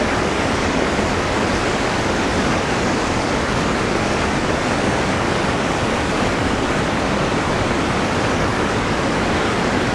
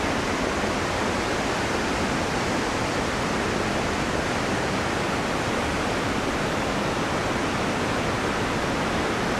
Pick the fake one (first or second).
first